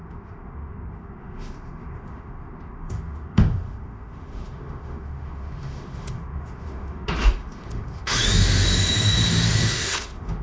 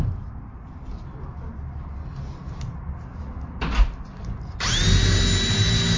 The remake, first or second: first